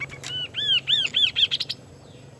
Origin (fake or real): real